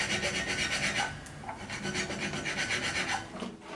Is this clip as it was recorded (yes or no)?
yes